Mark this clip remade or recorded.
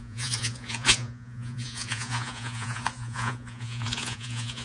remade